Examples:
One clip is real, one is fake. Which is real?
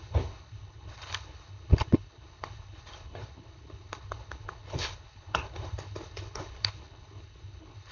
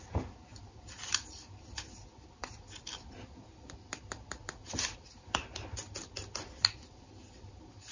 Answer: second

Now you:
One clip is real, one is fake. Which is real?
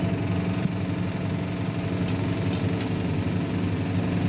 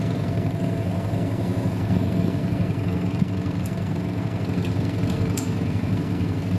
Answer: first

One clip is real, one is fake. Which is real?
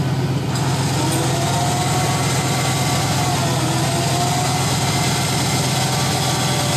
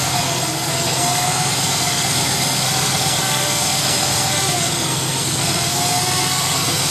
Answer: first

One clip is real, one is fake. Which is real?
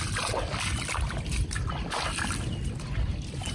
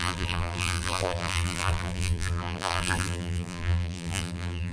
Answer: first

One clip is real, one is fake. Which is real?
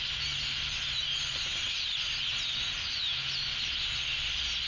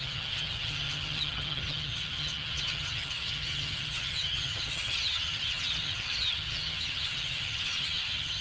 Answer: first